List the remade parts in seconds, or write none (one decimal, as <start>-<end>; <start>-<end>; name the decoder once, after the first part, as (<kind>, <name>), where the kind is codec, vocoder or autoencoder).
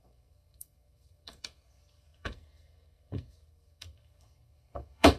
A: 0.0-5.2 (codec, SNAC)